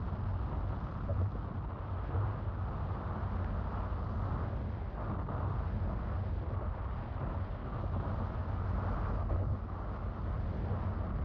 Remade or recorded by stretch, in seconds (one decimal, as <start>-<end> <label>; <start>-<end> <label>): 0.0-11.2 recorded